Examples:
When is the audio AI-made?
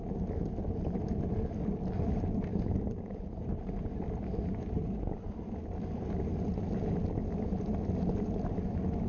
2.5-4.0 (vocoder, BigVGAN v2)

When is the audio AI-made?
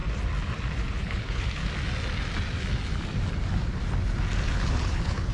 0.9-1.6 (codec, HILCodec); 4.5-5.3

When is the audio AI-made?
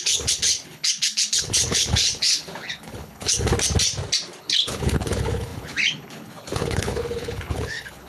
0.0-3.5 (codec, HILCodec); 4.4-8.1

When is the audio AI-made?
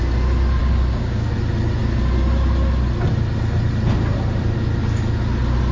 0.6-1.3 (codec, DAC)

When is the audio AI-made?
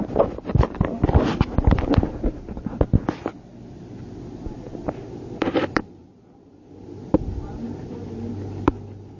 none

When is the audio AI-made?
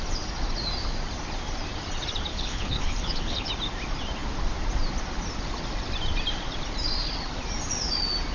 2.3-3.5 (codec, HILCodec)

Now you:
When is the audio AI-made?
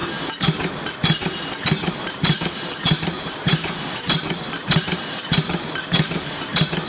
1.9-6.9 (vocoder, BigVGAN v2)